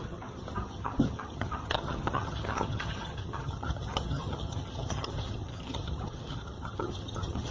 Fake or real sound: fake